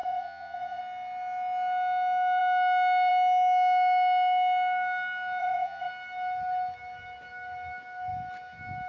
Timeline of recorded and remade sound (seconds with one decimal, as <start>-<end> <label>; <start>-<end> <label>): 0.0-0.8 remade; 0.8-5.4 recorded; 5.4-5.9 remade; 5.9-8.9 recorded